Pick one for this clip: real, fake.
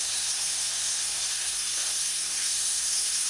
fake